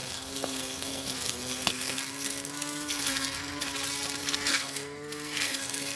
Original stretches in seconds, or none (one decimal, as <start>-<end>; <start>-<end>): 3.6-4.2